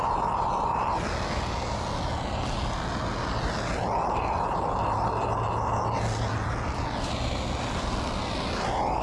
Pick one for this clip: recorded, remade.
recorded